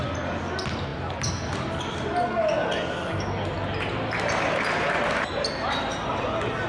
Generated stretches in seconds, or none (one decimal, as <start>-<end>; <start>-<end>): none